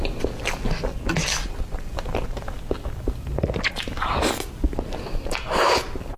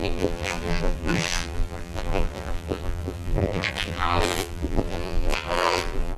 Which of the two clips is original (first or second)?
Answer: first